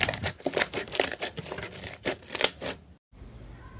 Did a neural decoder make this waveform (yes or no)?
no